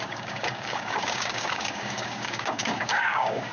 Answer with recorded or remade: remade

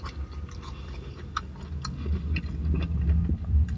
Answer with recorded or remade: recorded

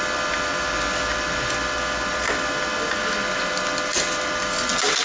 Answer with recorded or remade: recorded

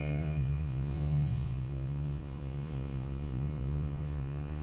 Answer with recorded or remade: remade